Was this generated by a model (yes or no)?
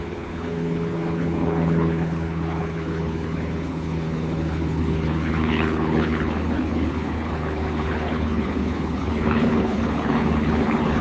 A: yes